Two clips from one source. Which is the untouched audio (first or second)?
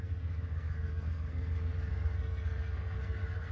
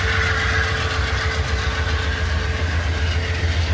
second